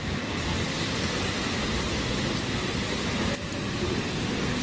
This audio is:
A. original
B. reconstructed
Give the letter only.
A